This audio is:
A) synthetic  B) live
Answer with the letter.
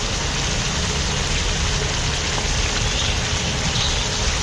B